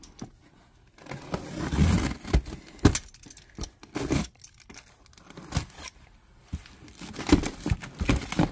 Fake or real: real